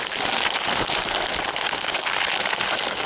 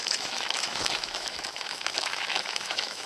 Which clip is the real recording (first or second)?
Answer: first